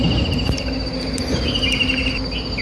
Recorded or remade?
recorded